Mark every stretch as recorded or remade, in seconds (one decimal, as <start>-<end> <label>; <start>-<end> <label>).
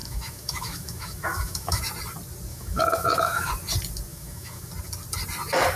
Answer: 0.0-1.8 remade; 1.8-2.5 recorded; 2.5-3.5 remade; 3.5-4.1 recorded; 4.1-4.7 remade; 4.7-5.8 recorded